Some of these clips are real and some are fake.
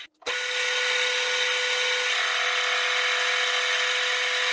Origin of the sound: real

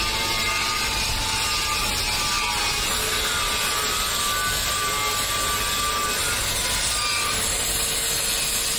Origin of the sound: real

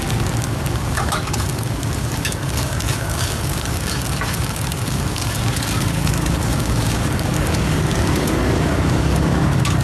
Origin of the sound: fake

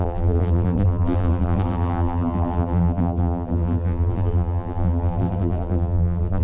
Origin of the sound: fake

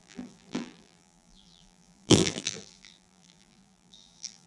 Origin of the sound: fake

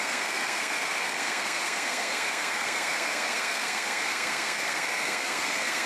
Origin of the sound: fake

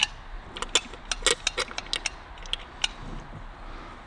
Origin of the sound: real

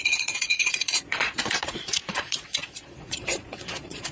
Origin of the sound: fake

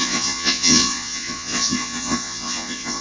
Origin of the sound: fake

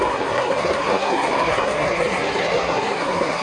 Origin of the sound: fake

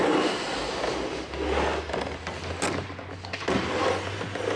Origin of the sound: real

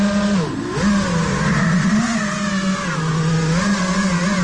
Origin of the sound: real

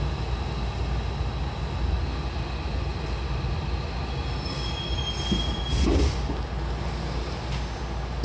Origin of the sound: real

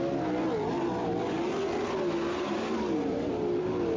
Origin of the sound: real